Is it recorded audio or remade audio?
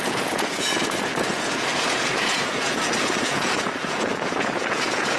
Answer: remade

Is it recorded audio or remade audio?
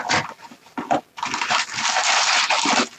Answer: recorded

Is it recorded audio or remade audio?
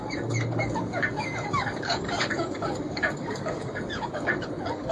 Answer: remade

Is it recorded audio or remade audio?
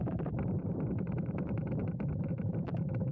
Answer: recorded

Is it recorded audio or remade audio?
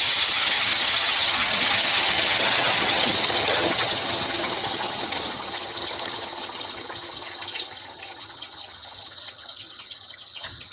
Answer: remade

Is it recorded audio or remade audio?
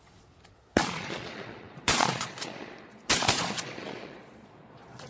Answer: remade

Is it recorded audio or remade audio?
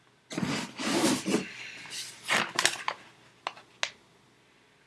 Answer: recorded